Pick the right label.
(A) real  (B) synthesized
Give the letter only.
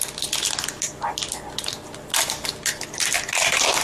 A